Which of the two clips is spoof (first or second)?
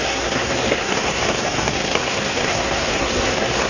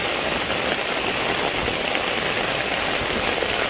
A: first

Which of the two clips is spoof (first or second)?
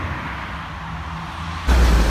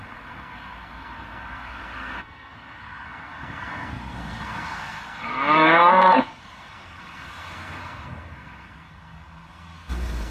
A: second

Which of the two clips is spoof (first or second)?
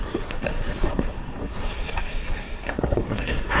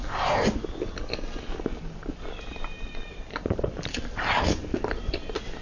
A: first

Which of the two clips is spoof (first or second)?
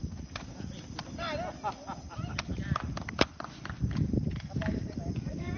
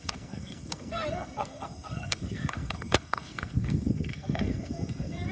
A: second